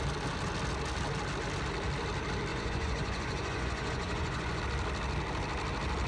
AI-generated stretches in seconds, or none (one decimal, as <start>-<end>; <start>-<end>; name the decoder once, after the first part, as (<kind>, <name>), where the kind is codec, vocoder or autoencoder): 2.5-4.6 (vocoder, Vocos)